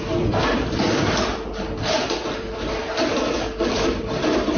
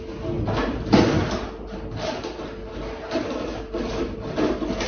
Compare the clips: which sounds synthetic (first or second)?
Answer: first